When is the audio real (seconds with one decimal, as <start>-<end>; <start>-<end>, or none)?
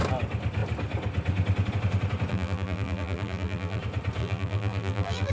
0.0-2.3; 3.8-4.2